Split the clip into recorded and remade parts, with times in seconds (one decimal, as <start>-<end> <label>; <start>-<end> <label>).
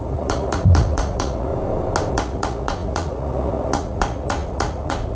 0.0-1.5 remade; 1.5-2.1 recorded; 2.1-5.2 remade